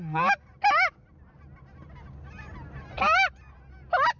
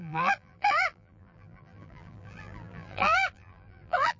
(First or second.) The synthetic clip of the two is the second